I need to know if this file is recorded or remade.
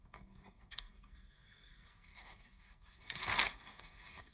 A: remade